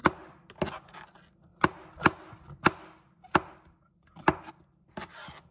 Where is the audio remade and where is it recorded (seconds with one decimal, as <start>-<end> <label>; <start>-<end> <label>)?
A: 0.0-5.5 recorded